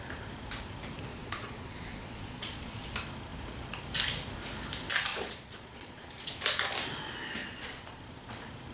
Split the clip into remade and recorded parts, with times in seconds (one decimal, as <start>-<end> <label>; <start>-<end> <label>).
0.0-1.1 recorded; 1.1-2.9 remade; 2.9-5.1 recorded; 5.1-6.3 remade; 6.3-7.4 recorded; 7.4-8.0 remade; 8.0-8.7 recorded